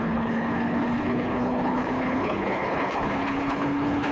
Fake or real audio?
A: fake